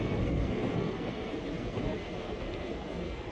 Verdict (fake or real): fake